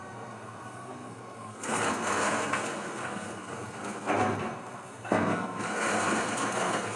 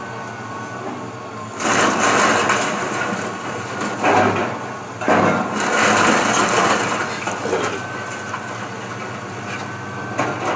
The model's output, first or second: first